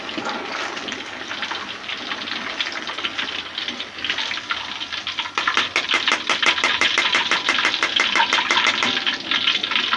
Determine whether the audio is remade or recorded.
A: recorded